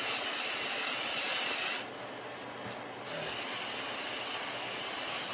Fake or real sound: real